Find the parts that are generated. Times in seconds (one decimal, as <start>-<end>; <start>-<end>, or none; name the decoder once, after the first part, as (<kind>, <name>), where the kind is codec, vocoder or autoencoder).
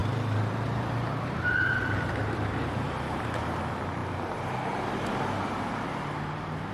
0.0-3.6 (vocoder, BigVGAN v2)